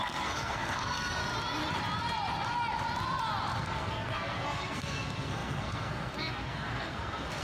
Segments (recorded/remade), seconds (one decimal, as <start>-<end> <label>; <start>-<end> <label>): 0.0-1.2 remade; 1.2-3.6 recorded; 3.6-7.4 remade